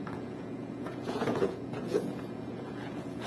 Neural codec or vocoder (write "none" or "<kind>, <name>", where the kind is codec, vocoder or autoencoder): vocoder, Vocos